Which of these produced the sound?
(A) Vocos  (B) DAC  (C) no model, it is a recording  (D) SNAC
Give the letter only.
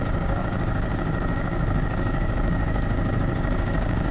B